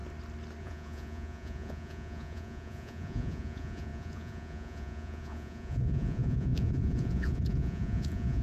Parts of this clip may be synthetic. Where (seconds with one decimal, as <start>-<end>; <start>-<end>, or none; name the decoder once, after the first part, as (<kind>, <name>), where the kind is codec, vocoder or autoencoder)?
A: 0.6-8.4 (vocoder, Vocos)